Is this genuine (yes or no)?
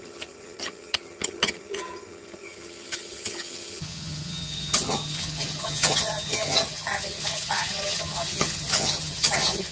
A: no